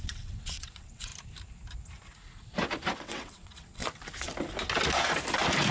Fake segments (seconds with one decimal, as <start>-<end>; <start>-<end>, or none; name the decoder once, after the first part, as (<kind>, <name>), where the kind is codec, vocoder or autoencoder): 0.0-1.1 (vocoder, WaveNeXt); 3.0-3.8